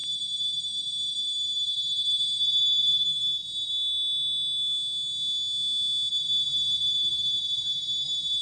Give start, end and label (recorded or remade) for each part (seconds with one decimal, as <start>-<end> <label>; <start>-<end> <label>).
0.0-3.7 remade; 3.7-6.1 recorded; 6.1-8.4 remade